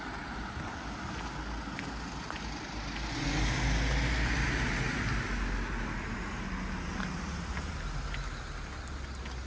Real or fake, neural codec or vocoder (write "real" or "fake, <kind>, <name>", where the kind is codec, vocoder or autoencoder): real